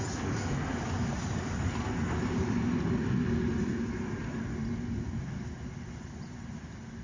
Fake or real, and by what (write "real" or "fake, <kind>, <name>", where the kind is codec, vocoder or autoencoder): real